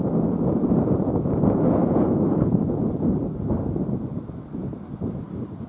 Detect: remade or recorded recorded